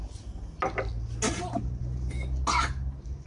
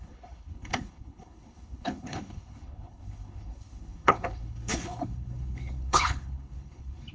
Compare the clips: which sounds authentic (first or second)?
first